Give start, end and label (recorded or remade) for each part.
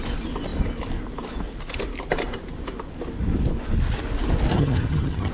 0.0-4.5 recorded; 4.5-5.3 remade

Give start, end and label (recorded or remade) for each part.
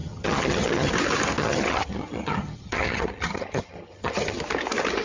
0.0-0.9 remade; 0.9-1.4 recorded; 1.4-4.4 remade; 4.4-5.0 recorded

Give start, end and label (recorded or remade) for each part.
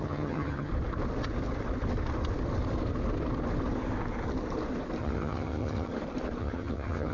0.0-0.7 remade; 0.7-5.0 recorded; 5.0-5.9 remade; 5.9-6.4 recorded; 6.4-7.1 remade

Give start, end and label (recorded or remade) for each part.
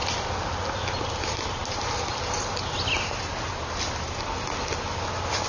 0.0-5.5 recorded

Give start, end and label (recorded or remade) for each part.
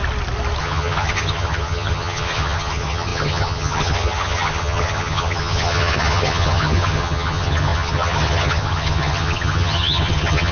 0.0-0.6 recorded; 0.6-10.5 remade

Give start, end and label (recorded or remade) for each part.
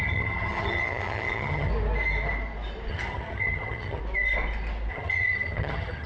0.0-1.7 remade; 1.7-2.9 recorded; 2.9-4.0 remade; 4.0-4.9 recorded; 4.9-6.1 remade